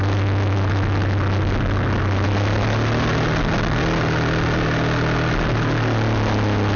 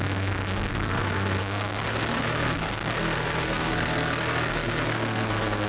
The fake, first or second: second